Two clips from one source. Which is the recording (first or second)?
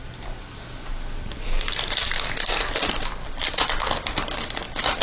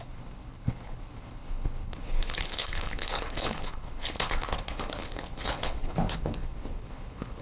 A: first